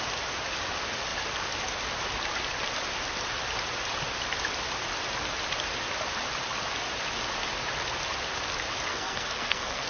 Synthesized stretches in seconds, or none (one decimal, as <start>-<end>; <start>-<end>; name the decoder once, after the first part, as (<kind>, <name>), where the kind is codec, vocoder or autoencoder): 8.9-9.9 (codec, SNAC)